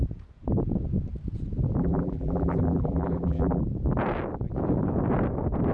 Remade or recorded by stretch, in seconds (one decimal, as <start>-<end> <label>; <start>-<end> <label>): 0.0-1.8 recorded; 1.8-3.6 remade; 3.6-5.7 recorded